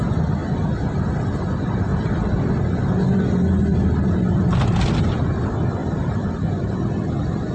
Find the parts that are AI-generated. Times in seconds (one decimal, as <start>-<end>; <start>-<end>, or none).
1.9-2.6; 3.7-5.2; 5.8-7.5